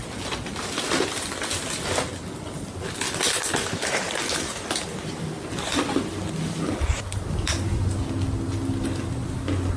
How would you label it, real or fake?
real